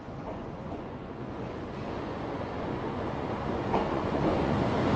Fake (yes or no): yes